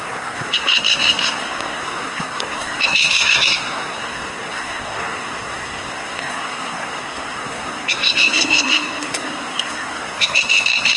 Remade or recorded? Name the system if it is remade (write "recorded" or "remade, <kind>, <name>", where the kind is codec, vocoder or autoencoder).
remade, codec, SNAC